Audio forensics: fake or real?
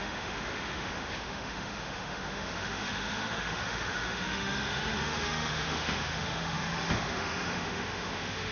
fake